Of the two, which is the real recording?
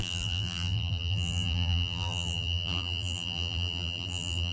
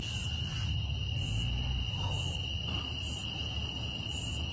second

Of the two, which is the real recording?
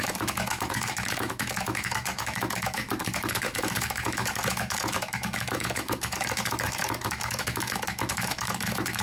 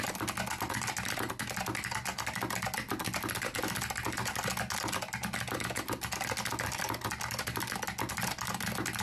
second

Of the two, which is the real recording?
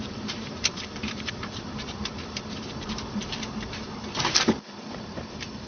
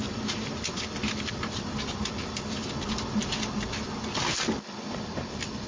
second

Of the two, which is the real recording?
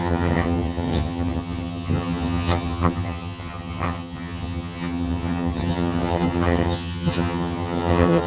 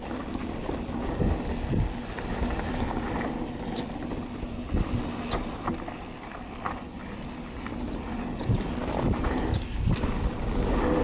second